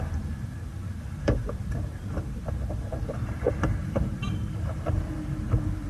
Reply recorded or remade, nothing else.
remade